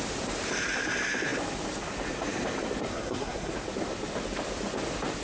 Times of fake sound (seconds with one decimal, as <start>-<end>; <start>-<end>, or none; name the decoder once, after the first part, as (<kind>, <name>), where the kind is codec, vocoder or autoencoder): 2.9-3.5 (codec, SNAC)